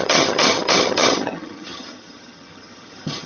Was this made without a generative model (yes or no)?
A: no